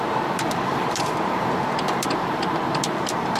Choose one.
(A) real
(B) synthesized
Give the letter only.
B